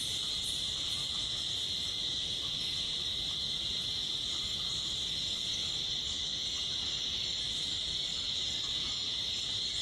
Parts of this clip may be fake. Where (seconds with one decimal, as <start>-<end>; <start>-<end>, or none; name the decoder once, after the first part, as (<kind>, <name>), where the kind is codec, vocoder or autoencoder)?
none